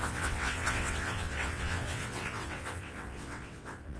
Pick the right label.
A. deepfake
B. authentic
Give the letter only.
A